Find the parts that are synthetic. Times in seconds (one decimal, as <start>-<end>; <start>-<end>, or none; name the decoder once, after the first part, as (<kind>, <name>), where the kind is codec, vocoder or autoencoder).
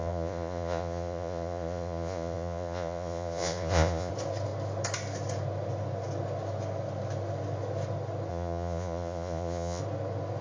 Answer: 0.0-4.1 (vocoder, Vocos); 8.3-9.8